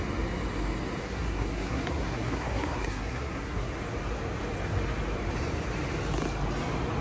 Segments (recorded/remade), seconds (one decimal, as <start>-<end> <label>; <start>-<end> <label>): 0.0-1.0 recorded; 1.0-3.7 remade; 3.7-7.0 recorded